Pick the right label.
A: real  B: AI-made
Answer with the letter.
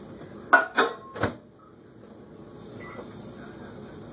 A